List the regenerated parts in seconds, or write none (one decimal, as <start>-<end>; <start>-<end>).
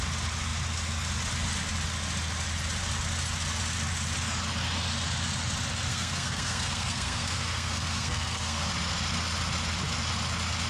5.9-8.7